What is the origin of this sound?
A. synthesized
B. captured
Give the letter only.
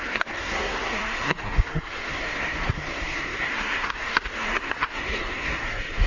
A